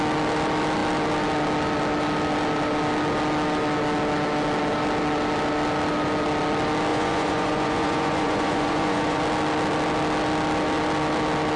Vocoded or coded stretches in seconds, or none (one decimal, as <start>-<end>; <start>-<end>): 6.9-9.2

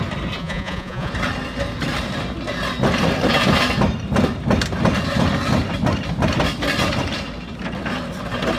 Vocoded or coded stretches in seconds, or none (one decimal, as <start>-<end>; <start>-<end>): 0.4-1.1

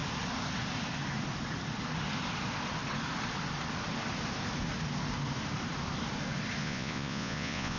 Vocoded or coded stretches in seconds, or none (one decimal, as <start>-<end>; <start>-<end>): 6.6-7.8